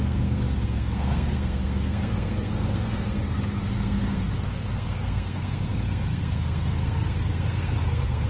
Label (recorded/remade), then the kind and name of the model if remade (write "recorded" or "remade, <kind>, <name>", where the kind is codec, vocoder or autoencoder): remade, codec, SNAC